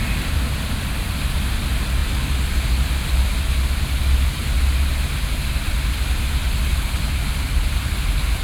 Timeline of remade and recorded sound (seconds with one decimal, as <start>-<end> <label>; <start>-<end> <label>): 0.0-8.4 recorded